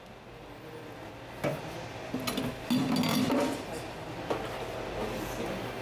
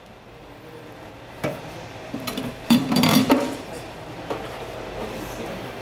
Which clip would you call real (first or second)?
first